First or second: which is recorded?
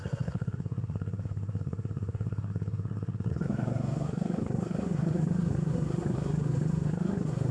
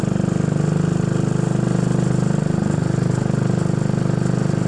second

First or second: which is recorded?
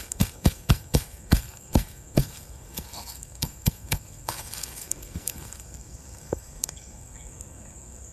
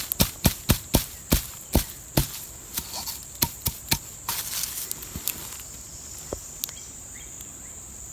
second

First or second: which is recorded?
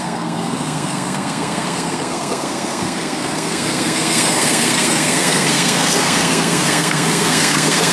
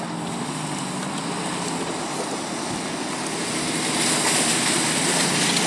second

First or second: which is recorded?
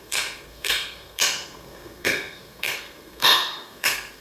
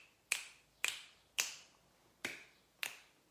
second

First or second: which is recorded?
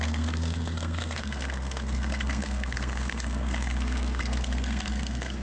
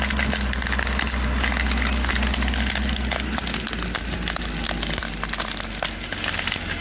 second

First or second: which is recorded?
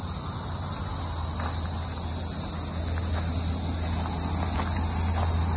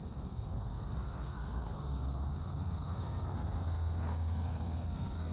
first